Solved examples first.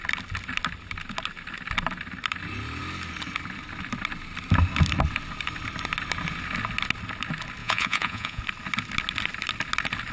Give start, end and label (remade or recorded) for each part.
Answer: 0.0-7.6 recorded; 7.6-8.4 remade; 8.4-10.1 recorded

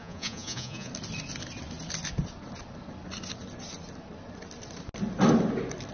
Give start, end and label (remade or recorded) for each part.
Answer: 0.0-0.9 remade; 0.9-5.9 recorded

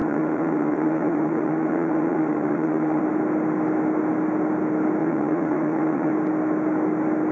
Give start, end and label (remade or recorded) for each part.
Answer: 0.0-3.0 remade; 3.0-5.0 recorded; 5.0-6.1 remade; 6.1-7.3 recorded

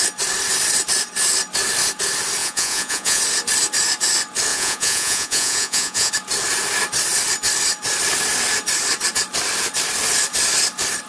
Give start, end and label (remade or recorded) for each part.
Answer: 0.0-2.4 recorded; 2.4-3.2 remade; 3.2-4.5 recorded; 4.5-6.1 remade; 6.1-11.1 recorded